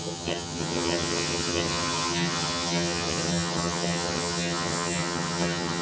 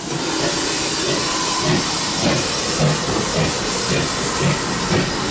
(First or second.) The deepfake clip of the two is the first